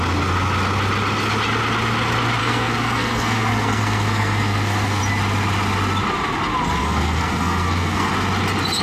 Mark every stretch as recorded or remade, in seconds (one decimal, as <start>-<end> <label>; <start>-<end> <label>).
0.0-2.4 recorded; 2.4-5.0 remade; 5.0-6.8 recorded; 6.8-8.1 remade; 8.1-8.8 recorded